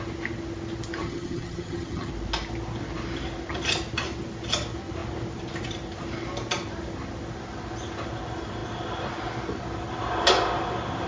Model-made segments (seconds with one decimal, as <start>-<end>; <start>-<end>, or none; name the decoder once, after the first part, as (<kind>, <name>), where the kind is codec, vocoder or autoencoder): 1.0-2.1 (vocoder, HiFi-GAN)